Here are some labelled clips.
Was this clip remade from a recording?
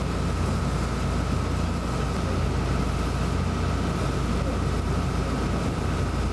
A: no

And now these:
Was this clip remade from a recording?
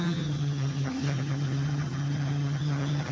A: yes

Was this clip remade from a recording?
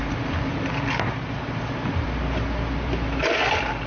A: no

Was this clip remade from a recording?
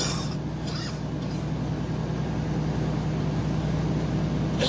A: no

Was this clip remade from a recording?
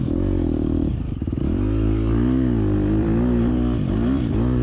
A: yes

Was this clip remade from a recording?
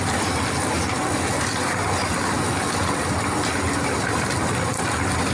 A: no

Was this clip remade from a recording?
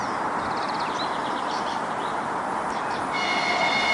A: no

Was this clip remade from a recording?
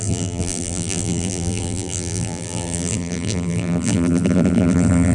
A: yes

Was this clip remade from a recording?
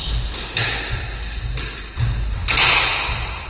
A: no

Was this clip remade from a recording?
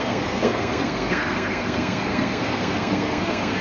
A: yes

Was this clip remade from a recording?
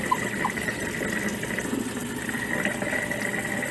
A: no